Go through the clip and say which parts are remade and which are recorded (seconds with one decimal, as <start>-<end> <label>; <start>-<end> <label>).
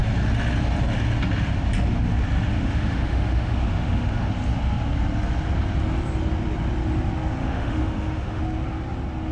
0.0-2.5 recorded; 2.5-4.3 remade; 4.3-7.4 recorded; 7.4-8.4 remade; 8.4-9.3 recorded